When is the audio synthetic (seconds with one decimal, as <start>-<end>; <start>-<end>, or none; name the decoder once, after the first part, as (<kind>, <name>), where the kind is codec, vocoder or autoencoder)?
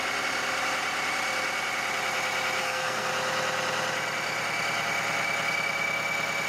2.6-3.1 (codec, SNAC)